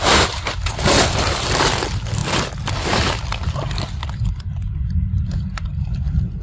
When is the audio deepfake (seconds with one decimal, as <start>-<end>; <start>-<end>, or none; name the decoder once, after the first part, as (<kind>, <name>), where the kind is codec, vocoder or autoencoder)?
none